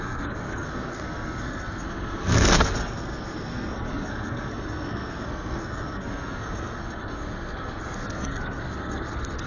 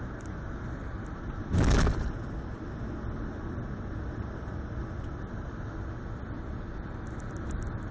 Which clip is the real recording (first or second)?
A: second